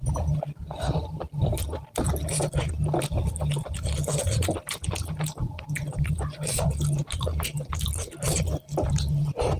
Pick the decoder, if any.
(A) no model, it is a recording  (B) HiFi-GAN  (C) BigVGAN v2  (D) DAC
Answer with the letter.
A